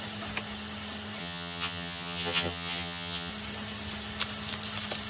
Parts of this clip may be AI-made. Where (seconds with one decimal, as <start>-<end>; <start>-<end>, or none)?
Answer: 1.2-3.3